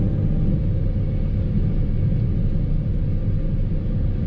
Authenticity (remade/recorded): recorded